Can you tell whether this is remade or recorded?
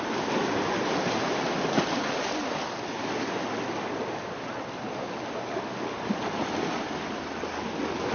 recorded